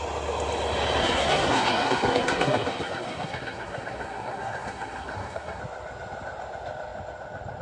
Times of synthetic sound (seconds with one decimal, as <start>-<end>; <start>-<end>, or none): 1.0-5.6